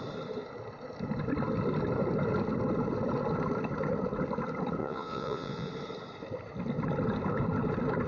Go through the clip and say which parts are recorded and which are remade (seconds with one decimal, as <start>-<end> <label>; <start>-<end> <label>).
0.0-4.8 recorded; 4.8-5.7 remade; 5.7-8.1 recorded